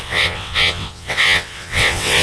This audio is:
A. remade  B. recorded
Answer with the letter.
A